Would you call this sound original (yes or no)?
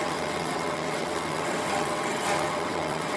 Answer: no